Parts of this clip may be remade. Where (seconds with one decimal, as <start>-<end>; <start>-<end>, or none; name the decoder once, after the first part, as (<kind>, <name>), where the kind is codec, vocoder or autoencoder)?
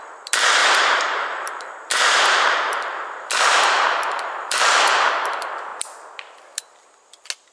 0.6-5.1 (vocoder, BigVGAN v2)